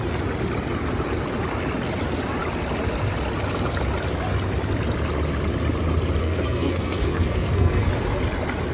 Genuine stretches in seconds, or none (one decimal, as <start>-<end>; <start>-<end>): 0.0-6.2; 7.9-8.7